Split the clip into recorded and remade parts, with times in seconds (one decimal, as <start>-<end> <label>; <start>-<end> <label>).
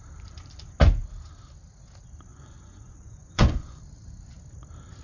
0.0-2.3 recorded; 2.3-3.8 remade; 3.8-5.0 recorded